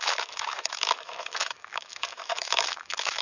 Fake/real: fake